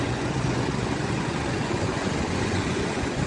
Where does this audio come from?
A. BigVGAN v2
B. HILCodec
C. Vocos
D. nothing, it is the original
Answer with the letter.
C